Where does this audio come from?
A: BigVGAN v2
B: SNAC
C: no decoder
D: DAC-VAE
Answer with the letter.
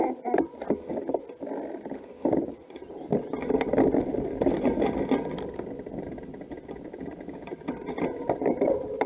C